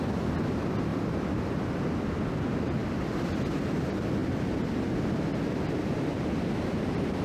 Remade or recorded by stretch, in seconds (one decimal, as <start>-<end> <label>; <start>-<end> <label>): 0.0-0.9 recorded; 0.9-2.0 remade; 2.0-2.8 recorded; 2.8-3.3 remade; 3.3-4.2 recorded; 4.2-6.5 remade; 6.5-7.2 recorded